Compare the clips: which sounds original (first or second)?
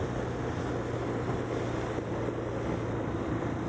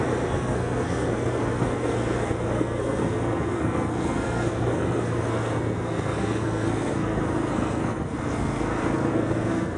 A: first